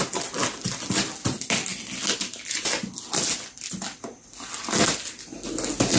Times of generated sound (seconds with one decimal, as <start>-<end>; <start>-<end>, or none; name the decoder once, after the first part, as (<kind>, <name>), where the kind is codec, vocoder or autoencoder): none